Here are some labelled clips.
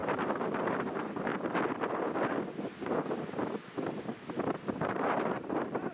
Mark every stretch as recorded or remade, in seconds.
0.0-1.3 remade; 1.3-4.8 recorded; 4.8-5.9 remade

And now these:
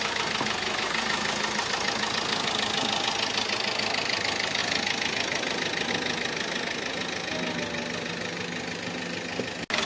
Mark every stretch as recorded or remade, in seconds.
0.0-9.9 recorded

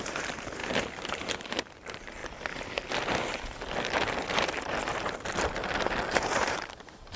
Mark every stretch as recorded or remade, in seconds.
0.0-2.2 remade; 2.2-6.1 recorded; 6.1-7.2 remade

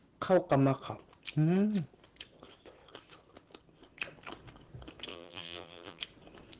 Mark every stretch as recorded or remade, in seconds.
0.0-5.1 recorded; 5.1-6.0 remade; 6.0-6.6 recorded

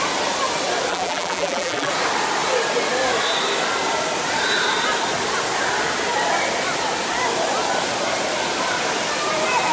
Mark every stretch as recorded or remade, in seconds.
0.0-0.9 recorded; 0.9-1.9 remade; 1.9-9.7 recorded

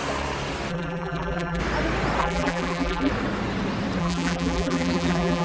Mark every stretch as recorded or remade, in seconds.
0.0-0.7 recorded; 0.7-1.6 remade; 1.6-2.2 recorded; 2.2-3.1 remade; 3.1-4.0 recorded; 4.0-5.4 remade

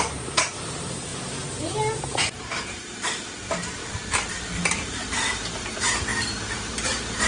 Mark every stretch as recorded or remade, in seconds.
0.0-1.1 remade; 1.1-2.0 recorded; 2.0-3.8 remade; 3.8-4.6 recorded; 4.6-7.3 remade

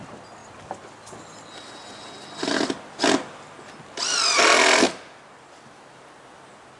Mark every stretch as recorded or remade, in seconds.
0.0-0.4 recorded; 0.4-1.1 remade; 1.1-6.8 recorded